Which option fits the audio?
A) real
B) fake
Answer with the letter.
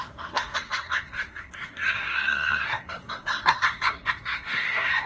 B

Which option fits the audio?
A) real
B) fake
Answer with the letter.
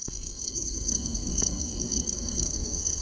B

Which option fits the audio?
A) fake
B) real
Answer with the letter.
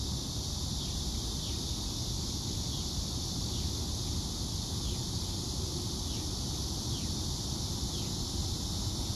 B